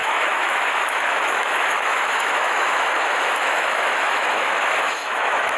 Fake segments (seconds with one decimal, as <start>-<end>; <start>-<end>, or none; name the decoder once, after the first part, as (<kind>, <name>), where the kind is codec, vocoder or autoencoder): 0.0-5.6 (autoencoder, DAC-VAE)